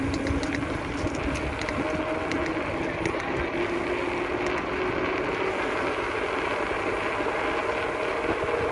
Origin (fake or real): real